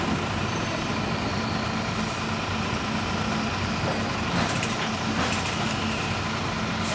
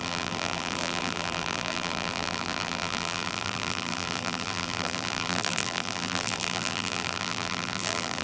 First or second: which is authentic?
first